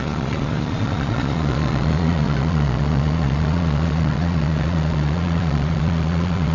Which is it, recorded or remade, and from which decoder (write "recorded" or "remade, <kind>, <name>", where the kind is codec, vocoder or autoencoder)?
remade, vocoder, Vocos